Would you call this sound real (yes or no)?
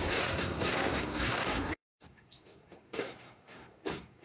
no